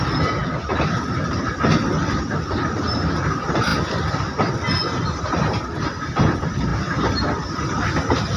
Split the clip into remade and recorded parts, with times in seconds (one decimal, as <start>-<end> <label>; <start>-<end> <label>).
0.0-6.7 recorded; 6.7-7.8 remade; 7.8-8.4 recorded